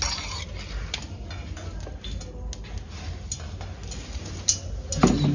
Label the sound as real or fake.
real